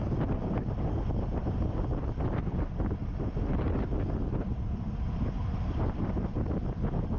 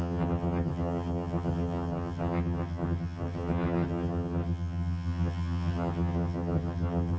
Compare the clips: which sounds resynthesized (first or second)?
second